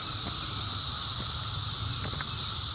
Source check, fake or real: real